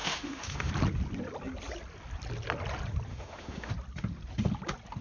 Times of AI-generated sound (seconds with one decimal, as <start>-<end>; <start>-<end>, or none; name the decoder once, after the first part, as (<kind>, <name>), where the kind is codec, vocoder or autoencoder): 0.0-0.7 (autoencoder, DAC-VAE); 3.1-3.7